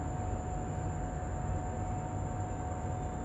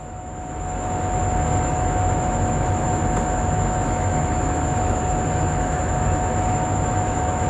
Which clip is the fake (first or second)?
second